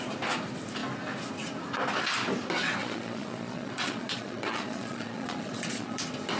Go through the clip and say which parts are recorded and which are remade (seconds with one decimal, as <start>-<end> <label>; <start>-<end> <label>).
0.0-2.8 recorded; 2.8-6.0 remade; 6.0-6.4 recorded